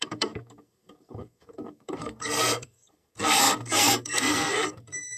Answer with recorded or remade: remade